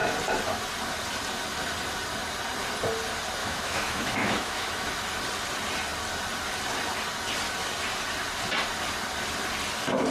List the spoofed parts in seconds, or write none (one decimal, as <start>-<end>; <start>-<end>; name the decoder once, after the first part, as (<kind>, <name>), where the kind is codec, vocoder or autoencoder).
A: 3.4-4.9 (autoencoder, DAC-VAE)